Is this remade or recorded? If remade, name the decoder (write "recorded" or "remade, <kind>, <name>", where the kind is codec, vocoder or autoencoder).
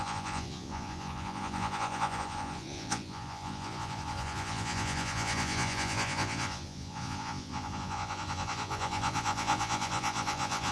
remade, vocoder, Vocos